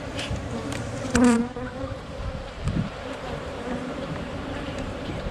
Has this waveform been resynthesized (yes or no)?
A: yes